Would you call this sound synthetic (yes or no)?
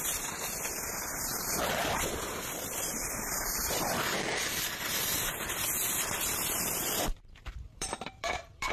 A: yes